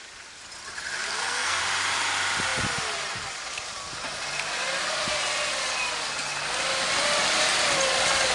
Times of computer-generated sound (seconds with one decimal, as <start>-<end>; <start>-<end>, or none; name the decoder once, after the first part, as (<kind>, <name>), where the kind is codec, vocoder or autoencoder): 1.1-1.6 (codec, SNAC)